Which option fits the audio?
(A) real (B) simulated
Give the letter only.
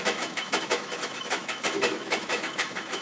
B